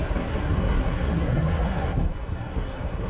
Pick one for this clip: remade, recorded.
remade